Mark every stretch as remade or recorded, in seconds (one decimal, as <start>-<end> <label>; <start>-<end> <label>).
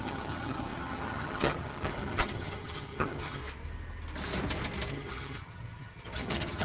0.0-3.4 remade; 3.4-4.9 recorded; 4.9-6.6 remade